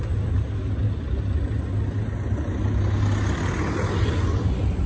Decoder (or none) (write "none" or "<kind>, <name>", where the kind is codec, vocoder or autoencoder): none